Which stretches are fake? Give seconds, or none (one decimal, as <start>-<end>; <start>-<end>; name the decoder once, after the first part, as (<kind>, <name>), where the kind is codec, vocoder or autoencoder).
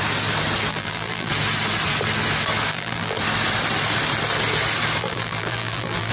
0.7-1.3 (vocoder, BigVGAN v2); 2.7-3.2; 5.0-6.1